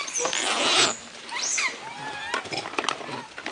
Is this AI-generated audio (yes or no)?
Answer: no